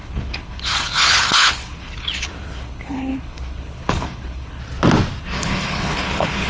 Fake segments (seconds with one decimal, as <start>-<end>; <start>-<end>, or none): 0.0-4.6; 5.2-6.5